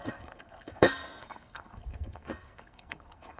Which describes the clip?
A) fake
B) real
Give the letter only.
A